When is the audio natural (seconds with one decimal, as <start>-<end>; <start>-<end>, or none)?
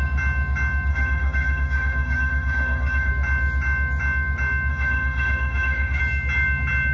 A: 0.0-0.9; 3.1-4.7; 6.0-6.9